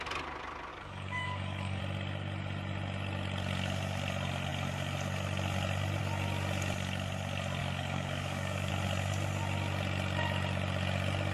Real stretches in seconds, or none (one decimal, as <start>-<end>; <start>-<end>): 0.0-0.7; 1.8-7.6; 8.7-11.3